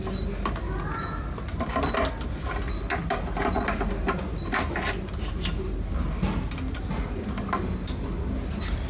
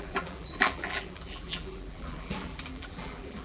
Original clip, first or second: first